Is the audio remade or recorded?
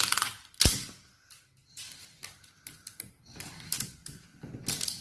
recorded